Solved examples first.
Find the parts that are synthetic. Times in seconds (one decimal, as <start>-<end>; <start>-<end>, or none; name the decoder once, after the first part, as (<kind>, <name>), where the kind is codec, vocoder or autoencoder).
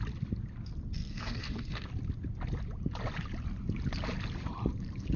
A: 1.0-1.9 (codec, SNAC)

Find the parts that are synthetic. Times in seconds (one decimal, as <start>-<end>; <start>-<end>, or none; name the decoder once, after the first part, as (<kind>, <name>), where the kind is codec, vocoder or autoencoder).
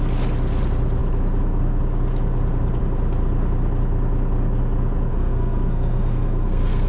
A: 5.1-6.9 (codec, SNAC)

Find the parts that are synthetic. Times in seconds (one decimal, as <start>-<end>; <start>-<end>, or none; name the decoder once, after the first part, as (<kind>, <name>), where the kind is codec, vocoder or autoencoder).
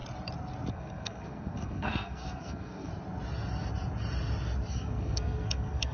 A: 0.7-2.9 (codec, SNAC); 4.7-5.9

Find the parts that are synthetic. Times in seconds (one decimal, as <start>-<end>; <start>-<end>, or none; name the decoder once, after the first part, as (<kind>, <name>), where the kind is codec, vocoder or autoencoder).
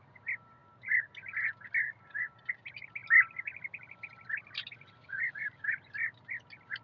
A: none